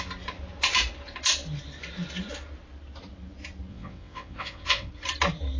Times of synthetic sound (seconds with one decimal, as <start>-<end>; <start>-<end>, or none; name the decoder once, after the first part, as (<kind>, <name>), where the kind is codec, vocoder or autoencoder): 3.7-4.9 (vocoder, WaveNeXt)